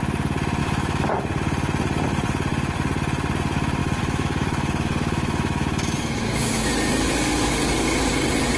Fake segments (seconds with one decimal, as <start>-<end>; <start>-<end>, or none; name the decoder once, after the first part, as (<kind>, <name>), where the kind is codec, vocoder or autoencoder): 0.6-1.1 (autoencoder, DAC-VAE); 3.8-6.7